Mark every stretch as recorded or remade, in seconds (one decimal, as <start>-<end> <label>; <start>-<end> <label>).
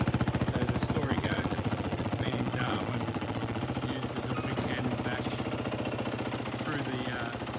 0.0-1.1 recorded; 1.1-3.6 remade; 3.6-7.6 recorded